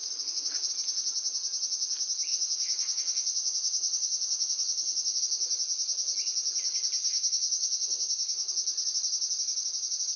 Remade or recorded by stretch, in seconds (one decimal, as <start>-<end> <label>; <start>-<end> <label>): 0.0-0.7 remade; 0.7-2.3 recorded; 2.3-5.2 remade; 5.2-7.0 recorded; 7.0-8.5 remade; 8.5-10.2 recorded